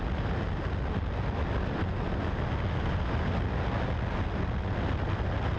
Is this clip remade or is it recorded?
recorded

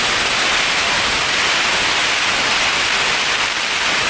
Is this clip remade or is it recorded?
recorded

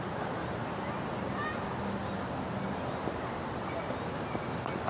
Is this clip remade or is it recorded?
recorded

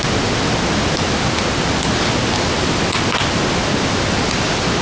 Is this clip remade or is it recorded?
recorded